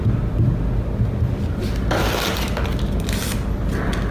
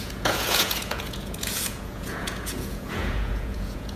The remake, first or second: second